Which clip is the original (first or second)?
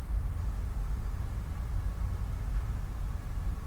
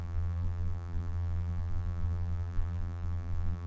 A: first